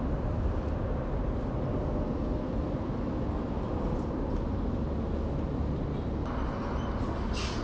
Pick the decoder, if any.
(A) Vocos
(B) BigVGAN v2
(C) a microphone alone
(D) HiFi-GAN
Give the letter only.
C